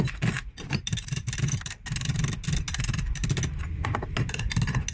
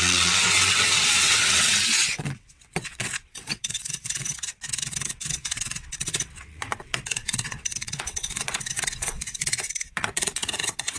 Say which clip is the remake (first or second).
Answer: second